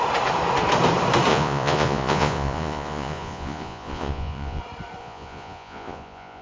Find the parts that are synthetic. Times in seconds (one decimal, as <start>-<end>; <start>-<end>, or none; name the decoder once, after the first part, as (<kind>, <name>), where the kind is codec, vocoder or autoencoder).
1.3-4.6 (vocoder, Vocos); 5.0-6.4